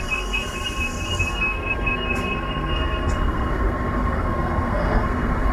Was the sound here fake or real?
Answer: fake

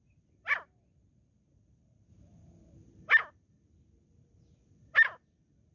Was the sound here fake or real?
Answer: fake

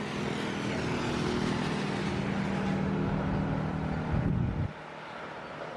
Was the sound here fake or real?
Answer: real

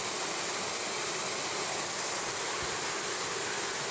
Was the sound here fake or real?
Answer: real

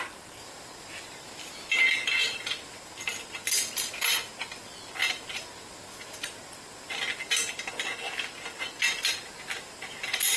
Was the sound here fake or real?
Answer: real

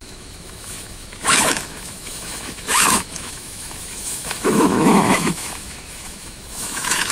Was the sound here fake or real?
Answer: fake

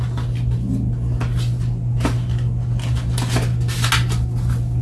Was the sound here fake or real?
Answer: real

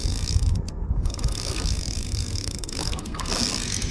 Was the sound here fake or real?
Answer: fake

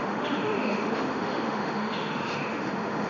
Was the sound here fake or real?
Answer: fake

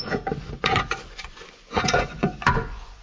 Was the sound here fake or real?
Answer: fake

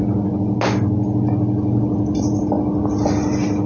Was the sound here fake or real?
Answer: real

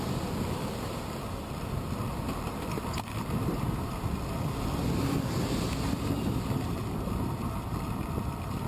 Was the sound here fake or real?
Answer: real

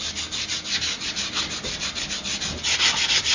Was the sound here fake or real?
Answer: real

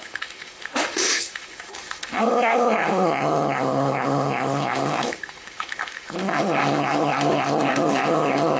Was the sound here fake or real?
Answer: fake